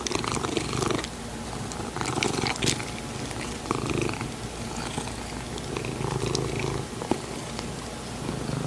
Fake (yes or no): no